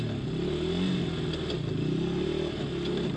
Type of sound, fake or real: real